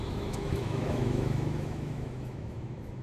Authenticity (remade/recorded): remade